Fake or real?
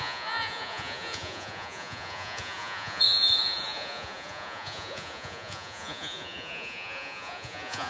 fake